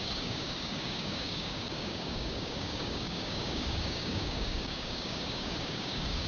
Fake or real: fake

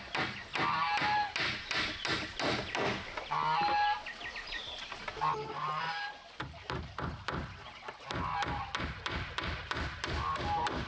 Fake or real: real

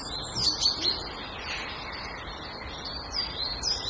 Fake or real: real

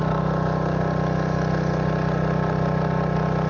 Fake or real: real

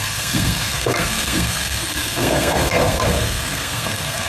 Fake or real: fake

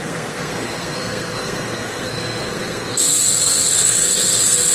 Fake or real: fake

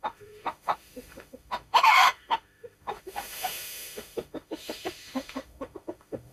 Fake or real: fake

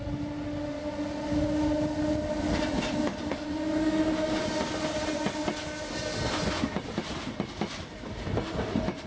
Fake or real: real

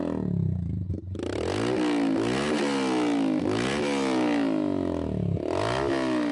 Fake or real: real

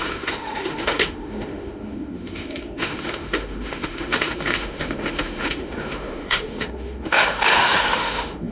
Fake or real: fake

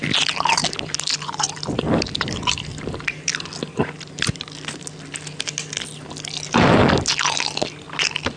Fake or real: real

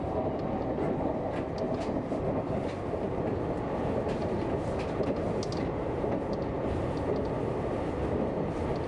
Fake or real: real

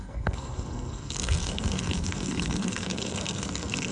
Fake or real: fake